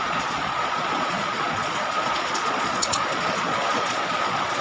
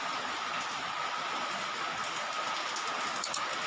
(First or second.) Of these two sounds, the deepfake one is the first